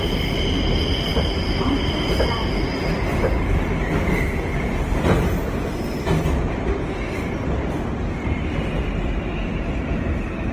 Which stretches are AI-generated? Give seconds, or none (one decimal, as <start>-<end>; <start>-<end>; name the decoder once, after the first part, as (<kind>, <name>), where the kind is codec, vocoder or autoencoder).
none